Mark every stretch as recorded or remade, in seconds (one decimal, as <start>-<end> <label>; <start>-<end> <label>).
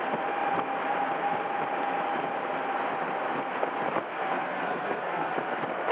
0.0-4.1 recorded; 4.1-5.3 remade; 5.3-5.9 recorded